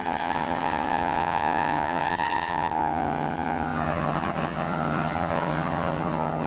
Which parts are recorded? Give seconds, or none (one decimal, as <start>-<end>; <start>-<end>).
none